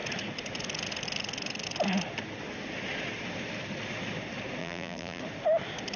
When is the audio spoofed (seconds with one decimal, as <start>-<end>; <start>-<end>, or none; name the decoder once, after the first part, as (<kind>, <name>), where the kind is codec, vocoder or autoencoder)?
4.6-5.2 (vocoder, BigVGAN v2)